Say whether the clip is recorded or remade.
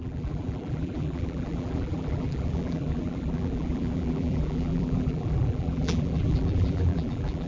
remade